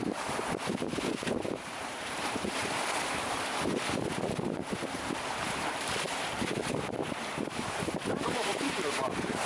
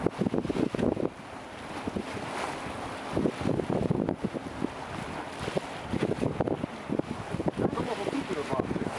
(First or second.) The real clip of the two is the second